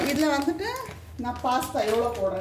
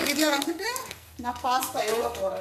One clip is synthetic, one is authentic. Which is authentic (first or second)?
first